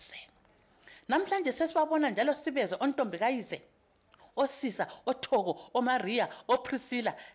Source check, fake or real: real